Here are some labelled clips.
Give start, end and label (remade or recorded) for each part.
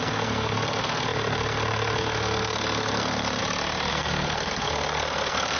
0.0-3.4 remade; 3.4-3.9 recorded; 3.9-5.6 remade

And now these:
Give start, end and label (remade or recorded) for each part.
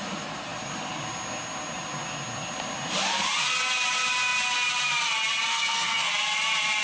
0.0-5.5 recorded; 5.5-6.1 remade; 6.1-6.8 recorded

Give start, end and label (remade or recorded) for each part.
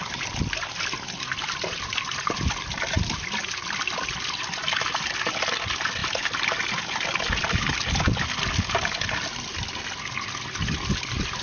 0.0-11.4 recorded